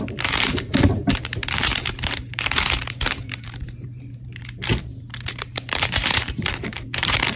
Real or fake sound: fake